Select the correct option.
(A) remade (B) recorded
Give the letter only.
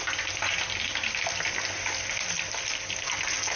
B